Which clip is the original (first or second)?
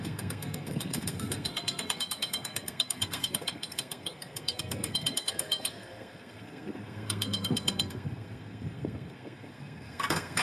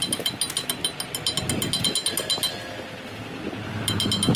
second